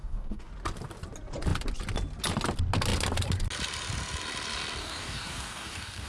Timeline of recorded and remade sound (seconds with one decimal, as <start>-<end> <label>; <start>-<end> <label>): 0.0-0.5 remade; 0.5-4.8 recorded; 4.8-6.1 remade